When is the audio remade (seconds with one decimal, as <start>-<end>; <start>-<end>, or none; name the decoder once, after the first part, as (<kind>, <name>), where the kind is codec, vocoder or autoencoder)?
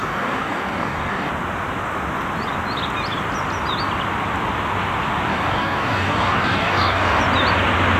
0.0-1.3 (codec, DAC); 5.3-7.2